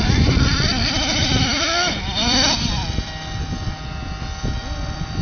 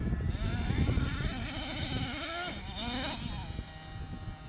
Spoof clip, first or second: first